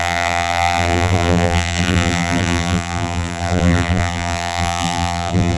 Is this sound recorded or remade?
remade